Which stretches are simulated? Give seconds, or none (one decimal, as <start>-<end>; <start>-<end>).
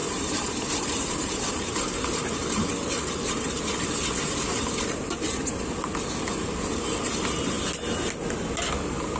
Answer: 0.0-1.7